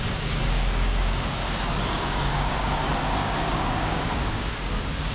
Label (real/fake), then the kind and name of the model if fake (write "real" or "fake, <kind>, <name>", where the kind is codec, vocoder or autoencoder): fake, codec, DAC